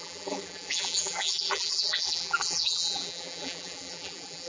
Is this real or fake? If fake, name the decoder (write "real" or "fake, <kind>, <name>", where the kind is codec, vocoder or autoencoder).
fake, vocoder, BigVGAN v2